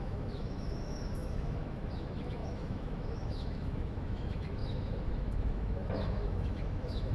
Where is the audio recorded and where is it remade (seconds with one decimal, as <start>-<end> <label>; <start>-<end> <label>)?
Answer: 0.0-7.1 remade